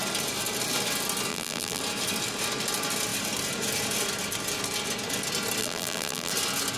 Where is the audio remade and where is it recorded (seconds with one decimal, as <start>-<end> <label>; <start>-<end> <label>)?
0.0-1.3 recorded; 1.3-1.8 remade; 1.8-5.6 recorded; 5.6-6.3 remade; 6.3-6.8 recorded